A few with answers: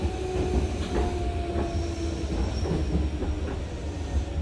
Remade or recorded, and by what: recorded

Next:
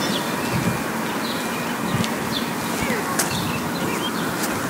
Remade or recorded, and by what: recorded